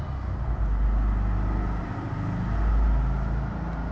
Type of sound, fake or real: real